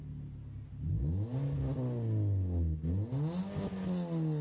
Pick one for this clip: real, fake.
real